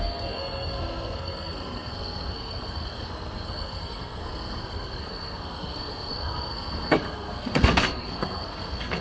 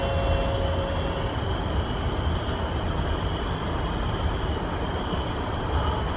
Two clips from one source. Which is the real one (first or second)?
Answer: second